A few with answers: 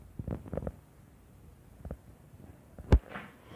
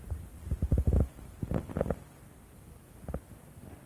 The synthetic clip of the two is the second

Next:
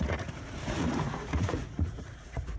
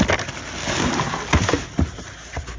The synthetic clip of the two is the first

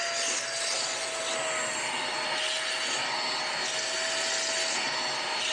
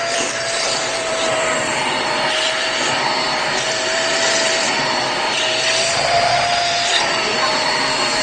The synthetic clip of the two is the second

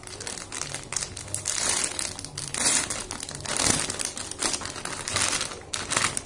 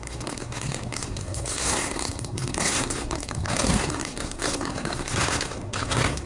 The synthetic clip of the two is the second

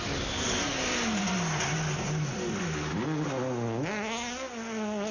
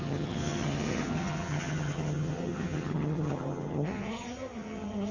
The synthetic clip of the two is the second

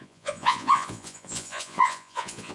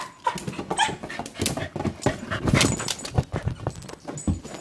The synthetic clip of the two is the first